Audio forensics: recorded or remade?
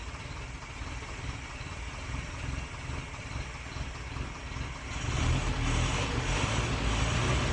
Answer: remade